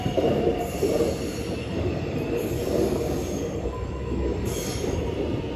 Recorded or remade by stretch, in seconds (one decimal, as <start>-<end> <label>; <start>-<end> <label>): 0.0-1.6 recorded; 1.6-5.0 remade; 5.0-5.6 recorded